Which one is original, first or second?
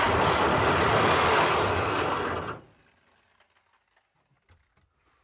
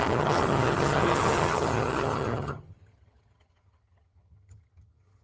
first